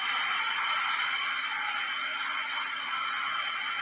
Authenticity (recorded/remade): recorded